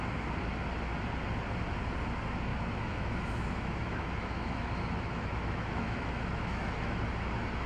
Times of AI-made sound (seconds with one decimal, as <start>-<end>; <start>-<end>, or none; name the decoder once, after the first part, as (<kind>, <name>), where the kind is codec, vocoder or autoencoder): 2.5-7.0 (autoencoder, DAC-VAE)